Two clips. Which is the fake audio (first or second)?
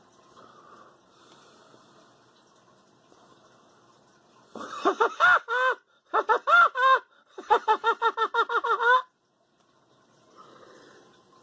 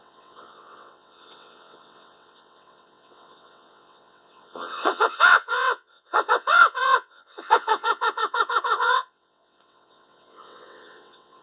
second